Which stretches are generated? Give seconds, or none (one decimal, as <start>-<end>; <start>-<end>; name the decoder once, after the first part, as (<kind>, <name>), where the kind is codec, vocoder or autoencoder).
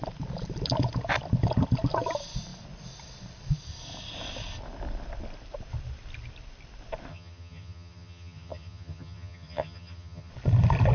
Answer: 7.1-10.3 (vocoder, HiFi-GAN)